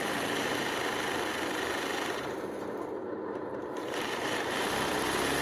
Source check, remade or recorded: remade